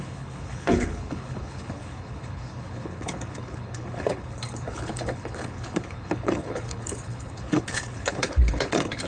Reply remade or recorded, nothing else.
remade